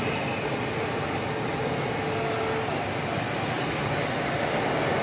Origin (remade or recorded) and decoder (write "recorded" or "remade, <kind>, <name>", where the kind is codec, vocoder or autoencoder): recorded